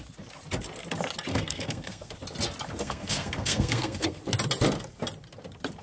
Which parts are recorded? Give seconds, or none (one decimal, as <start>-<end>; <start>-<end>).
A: 0.0-1.3; 2.1-2.8; 4.2-5.8